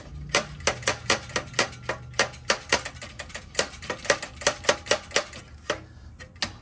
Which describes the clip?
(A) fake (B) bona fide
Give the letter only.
B